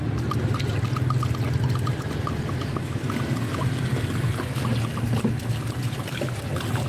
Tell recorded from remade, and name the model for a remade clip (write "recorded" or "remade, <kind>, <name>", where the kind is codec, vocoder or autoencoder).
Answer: recorded